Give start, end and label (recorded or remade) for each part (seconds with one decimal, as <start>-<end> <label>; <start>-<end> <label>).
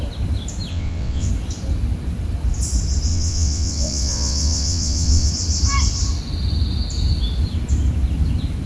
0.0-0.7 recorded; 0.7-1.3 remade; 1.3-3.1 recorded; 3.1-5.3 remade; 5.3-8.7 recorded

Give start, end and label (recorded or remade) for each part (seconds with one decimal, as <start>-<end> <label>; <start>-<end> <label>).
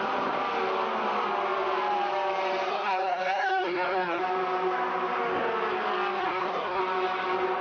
0.0-2.7 recorded; 2.7-4.2 remade; 4.2-6.2 recorded; 6.2-6.8 remade; 6.8-7.6 recorded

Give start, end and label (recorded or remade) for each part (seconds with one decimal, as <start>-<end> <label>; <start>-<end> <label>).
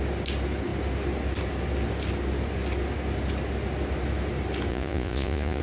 0.0-4.7 recorded; 4.7-5.6 remade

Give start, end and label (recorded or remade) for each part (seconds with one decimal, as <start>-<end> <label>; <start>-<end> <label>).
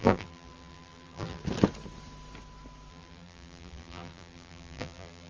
0.0-1.4 remade; 1.4-2.9 recorded; 2.9-5.3 remade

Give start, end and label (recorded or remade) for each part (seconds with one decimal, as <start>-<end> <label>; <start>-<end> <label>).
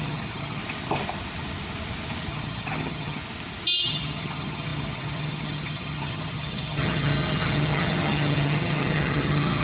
0.0-0.6 remade; 0.6-2.3 recorded; 2.3-3.2 remade; 3.2-3.8 recorded; 3.8-9.6 remade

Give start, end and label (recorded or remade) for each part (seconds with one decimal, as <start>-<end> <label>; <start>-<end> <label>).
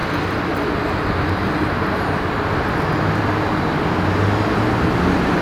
0.0-5.4 recorded